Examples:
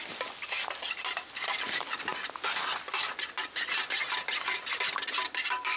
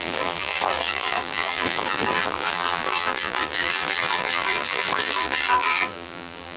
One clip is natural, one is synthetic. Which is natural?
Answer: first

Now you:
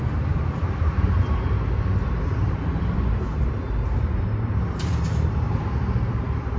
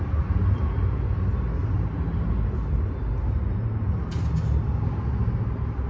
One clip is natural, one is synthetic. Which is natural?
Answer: second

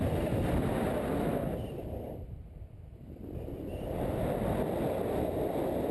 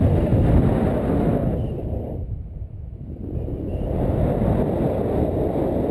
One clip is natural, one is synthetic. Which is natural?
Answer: second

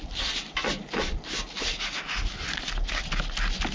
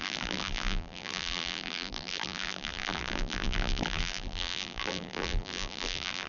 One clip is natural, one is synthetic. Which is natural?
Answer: first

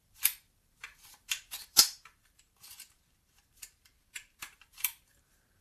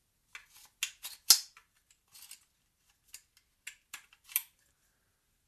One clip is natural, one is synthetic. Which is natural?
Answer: second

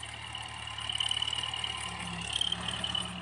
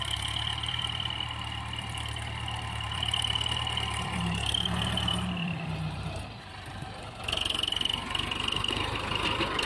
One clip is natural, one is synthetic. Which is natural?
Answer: first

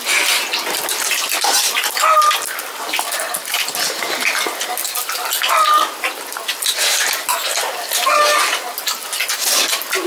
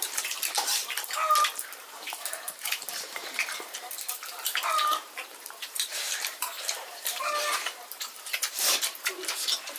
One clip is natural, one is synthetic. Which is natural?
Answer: first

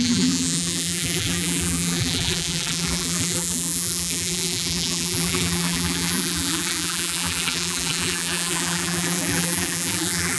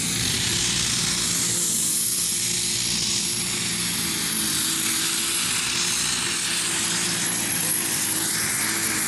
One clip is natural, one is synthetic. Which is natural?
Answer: second